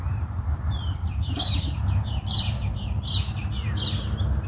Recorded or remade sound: remade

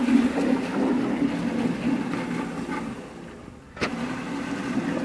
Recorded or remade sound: recorded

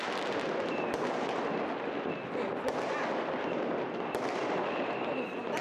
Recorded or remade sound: recorded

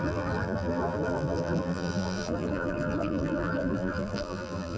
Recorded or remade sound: remade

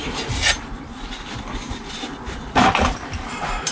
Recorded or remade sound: recorded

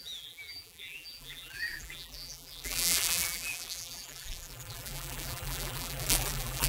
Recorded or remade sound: remade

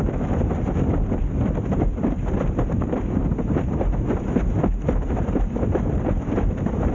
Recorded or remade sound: remade